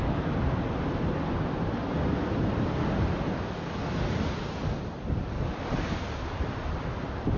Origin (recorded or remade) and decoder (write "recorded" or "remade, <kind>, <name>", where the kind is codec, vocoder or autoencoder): recorded